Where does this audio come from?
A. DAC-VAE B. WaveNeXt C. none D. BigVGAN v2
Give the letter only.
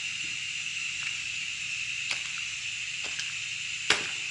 D